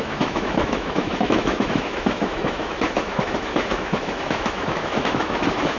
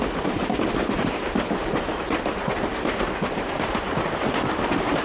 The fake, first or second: first